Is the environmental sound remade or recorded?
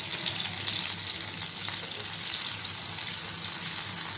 recorded